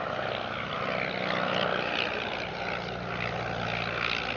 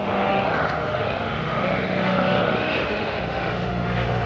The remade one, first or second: second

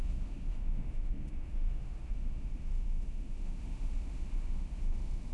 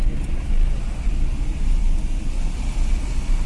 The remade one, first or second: first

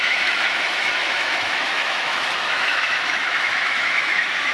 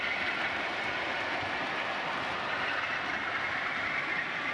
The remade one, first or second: first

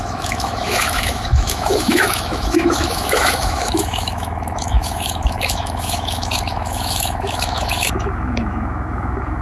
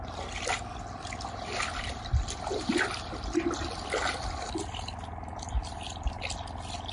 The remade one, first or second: first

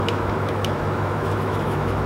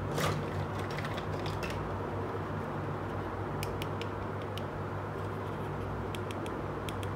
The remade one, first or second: first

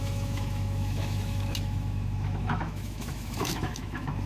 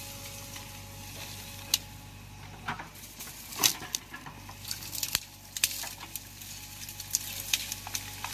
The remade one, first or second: first